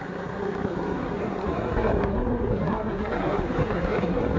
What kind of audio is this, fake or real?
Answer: fake